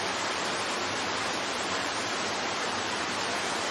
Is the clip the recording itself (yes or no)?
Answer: no